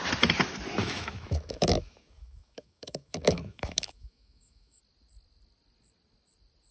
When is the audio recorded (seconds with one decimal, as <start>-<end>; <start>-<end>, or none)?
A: 0.0-0.8; 4.8-6.7